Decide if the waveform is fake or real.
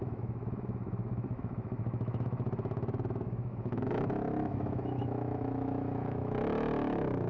fake